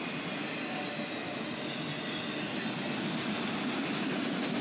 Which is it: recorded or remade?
recorded